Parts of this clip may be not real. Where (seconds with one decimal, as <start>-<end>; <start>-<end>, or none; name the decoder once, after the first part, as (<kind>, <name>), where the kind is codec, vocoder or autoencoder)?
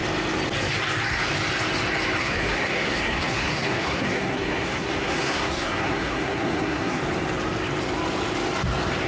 2.2-7.0 (codec, SNAC)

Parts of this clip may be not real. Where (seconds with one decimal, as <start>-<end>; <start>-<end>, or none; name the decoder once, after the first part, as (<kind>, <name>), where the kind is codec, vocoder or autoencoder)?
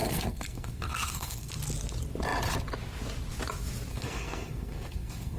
0.0-1.5 (codec, SNAC); 3.9-5.4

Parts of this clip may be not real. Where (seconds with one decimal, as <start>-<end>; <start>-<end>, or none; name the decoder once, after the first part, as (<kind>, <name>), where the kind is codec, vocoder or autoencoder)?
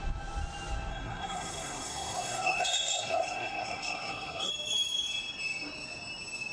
0.9-4.5 (codec, SNAC)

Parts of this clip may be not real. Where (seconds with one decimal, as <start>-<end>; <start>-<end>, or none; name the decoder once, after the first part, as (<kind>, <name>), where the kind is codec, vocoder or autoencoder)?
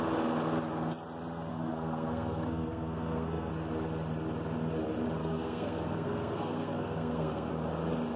1.5-3.5 (codec, SNAC); 5.2-7.5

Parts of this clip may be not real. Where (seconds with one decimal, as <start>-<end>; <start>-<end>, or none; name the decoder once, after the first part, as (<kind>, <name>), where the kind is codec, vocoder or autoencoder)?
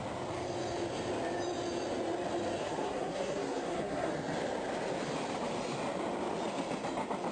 2.6-4.1 (codec, SNAC)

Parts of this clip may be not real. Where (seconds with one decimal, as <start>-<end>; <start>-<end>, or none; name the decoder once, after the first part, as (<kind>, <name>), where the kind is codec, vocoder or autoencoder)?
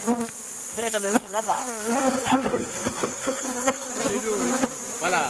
0.7-3.9 (codec, SNAC)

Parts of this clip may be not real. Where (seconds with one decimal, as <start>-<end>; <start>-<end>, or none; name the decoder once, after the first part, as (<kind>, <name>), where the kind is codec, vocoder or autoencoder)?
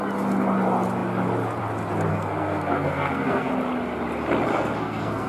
2.1-3.5 (codec, SNAC); 4.5-5.3